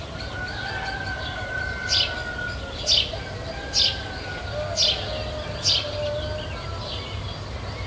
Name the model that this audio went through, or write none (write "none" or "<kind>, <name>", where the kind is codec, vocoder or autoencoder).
none